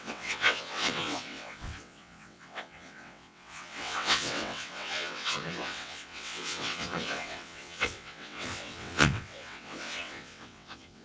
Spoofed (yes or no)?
yes